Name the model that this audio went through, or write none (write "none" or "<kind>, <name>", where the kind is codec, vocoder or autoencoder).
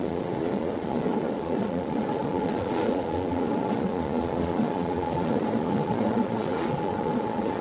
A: vocoder, Vocos